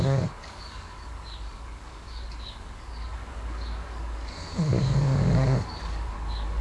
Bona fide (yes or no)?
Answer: no